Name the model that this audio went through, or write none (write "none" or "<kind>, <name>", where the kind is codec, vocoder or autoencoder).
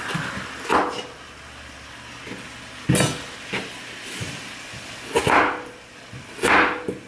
none